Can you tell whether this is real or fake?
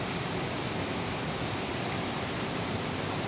real